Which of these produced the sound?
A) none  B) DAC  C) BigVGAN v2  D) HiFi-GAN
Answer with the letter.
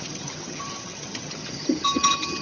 D